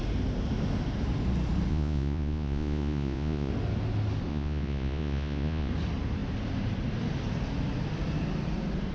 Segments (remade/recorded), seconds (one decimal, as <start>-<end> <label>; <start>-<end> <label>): 0.0-1.7 recorded; 1.7-3.5 remade; 3.5-4.3 recorded; 4.3-5.7 remade; 5.7-8.9 recorded